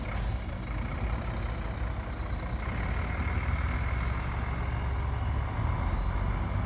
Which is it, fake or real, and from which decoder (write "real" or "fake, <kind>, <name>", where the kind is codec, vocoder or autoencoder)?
real